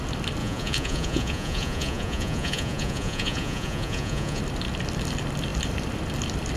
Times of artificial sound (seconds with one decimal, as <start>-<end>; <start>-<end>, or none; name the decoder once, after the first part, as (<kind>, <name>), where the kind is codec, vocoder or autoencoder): 0.4-4.4 (vocoder, Vocos)